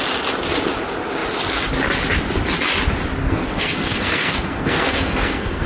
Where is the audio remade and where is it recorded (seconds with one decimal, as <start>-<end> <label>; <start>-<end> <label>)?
0.0-3.2 recorded; 3.2-5.7 remade